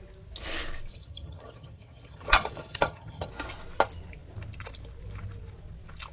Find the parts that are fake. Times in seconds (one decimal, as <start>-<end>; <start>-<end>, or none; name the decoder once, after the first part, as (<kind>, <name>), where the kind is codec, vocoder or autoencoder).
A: 0.9-3.3 (vocoder, HiFi-GAN)